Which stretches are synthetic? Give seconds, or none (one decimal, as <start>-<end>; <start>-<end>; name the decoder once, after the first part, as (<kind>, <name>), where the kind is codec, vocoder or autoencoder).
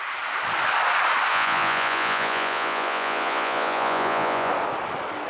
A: 1.3-4.5 (vocoder, Vocos)